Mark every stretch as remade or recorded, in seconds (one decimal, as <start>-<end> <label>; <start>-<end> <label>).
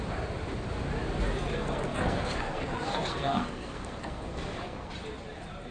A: 0.0-1.5 recorded; 1.5-4.9 remade; 4.9-5.7 recorded